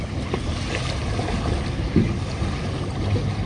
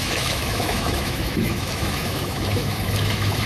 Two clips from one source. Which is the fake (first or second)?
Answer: second